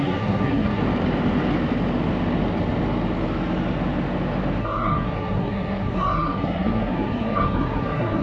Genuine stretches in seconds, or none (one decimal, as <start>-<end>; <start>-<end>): 0.8-4.6